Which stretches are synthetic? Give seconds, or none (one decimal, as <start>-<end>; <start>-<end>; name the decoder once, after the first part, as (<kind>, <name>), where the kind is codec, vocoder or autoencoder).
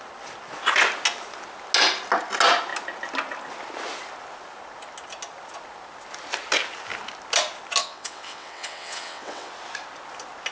7.8-9.5 (vocoder, WaveNeXt)